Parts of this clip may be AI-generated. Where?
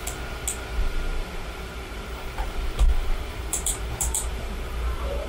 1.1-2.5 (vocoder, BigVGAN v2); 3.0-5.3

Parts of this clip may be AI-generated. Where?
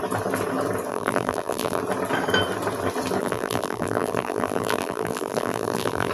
0.9-1.8 (vocoder, BigVGAN v2); 3.2-6.1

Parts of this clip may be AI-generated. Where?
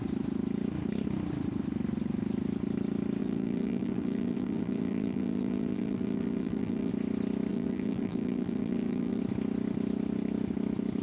3.2-6.9 (vocoder, BigVGAN v2); 7.5-9.2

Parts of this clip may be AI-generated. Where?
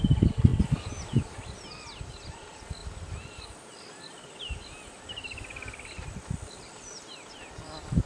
2.8-8.1 (vocoder, BigVGAN v2)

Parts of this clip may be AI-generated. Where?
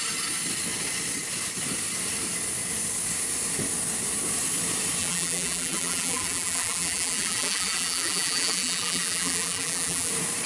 5.0-10.1 (vocoder, BigVGAN v2)